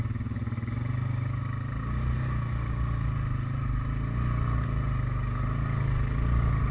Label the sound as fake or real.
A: real